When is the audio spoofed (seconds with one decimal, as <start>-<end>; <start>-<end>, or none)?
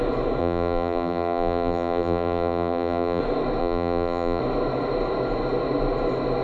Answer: 0.4-3.2; 3.6-4.4